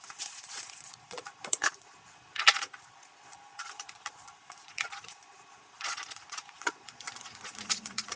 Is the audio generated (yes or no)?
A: yes